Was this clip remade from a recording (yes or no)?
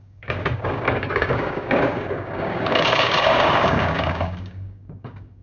yes